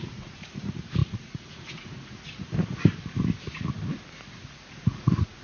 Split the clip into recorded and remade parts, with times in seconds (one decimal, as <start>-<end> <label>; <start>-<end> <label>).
0.0-2.5 remade; 2.5-3.4 recorded; 3.4-3.8 remade; 3.8-4.4 recorded; 4.4-5.4 remade